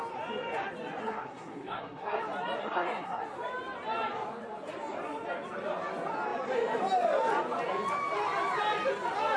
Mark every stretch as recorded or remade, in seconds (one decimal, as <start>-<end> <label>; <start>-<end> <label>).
0.0-1.0 recorded; 1.0-2.2 remade; 2.2-2.6 recorded; 2.6-3.2 remade; 3.2-9.4 recorded